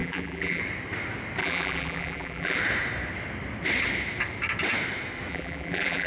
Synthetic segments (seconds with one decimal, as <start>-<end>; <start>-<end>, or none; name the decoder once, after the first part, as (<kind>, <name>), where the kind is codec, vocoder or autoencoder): 0.0-0.6 (vocoder, BigVGAN v2); 1.4-2.6; 5.3-6.1